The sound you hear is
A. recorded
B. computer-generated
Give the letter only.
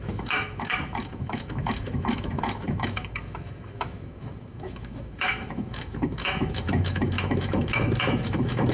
B